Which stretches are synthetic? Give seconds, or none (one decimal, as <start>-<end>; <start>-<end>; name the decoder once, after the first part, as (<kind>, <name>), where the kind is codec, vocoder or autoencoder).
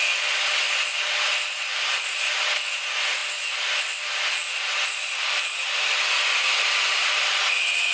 none